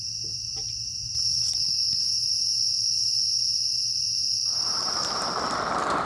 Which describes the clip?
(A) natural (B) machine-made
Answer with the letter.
B